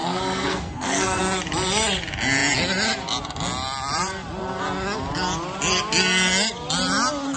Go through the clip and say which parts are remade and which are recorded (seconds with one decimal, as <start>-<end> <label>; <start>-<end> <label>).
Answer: 0.0-1.2 remade; 1.2-7.4 recorded